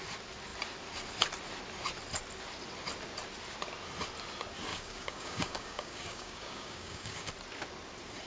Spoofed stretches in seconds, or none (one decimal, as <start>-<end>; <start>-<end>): 4.7-7.3